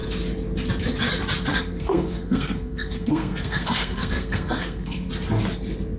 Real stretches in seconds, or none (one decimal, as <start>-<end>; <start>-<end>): 0.0-1.5; 5.1-6.0